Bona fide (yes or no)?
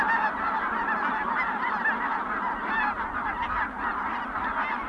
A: yes